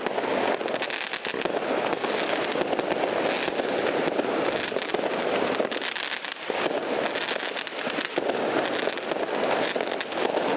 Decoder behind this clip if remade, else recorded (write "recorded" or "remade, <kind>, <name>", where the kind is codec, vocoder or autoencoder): recorded